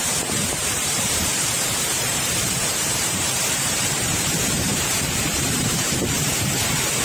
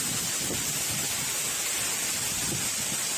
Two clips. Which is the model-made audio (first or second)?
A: first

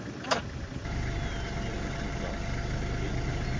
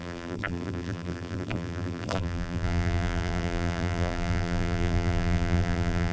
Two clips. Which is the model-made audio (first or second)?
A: second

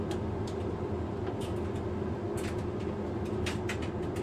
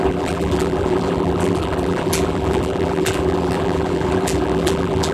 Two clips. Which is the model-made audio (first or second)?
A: second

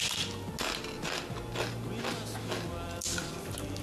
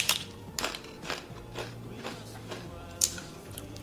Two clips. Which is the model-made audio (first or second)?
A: second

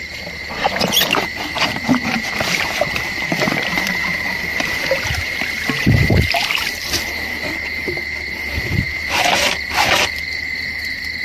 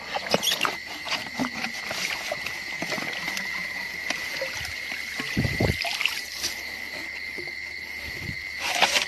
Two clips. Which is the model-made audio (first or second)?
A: first